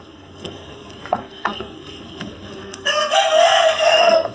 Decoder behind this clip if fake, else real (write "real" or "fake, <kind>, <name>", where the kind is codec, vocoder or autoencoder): fake, codec, SNAC